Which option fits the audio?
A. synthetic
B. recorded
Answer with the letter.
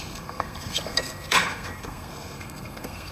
A